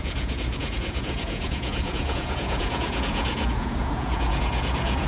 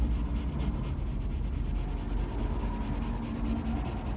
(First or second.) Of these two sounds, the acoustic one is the second